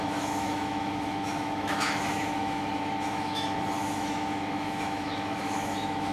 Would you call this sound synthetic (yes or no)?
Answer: yes